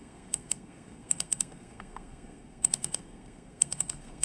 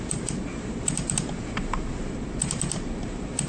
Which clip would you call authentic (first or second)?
second